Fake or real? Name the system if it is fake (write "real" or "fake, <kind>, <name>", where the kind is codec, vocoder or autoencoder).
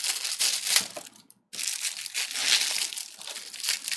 real